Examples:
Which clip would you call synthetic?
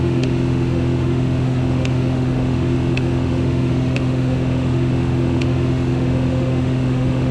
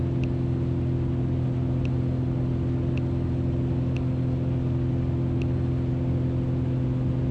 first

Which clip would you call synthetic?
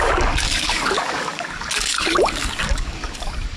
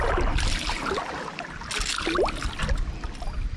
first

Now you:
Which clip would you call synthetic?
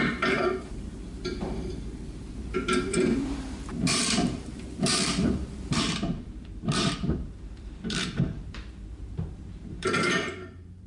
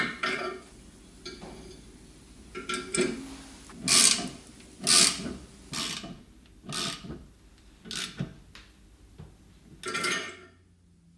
first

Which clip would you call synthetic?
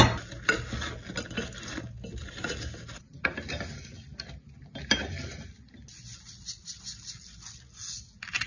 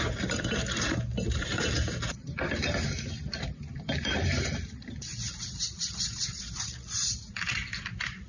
second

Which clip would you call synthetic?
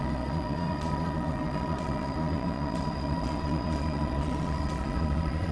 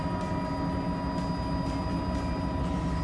first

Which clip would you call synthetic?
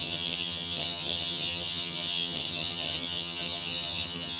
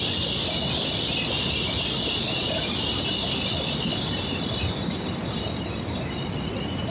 first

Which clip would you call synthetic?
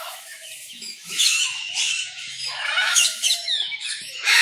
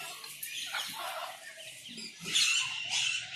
first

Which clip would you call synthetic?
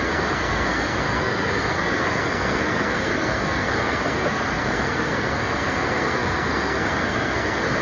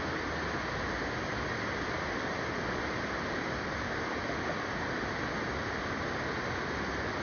first